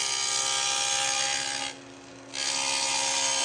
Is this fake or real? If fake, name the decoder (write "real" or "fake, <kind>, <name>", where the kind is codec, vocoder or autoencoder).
real